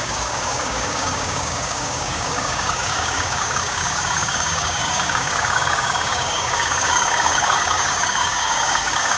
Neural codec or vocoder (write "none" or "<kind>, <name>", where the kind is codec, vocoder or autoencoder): codec, DAC